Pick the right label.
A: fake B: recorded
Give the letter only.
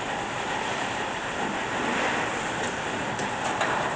A